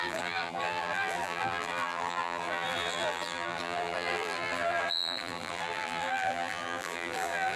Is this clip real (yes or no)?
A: no